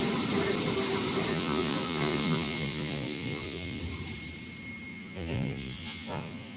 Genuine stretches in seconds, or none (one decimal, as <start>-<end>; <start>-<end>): 0.0-1.3; 3.8-4.9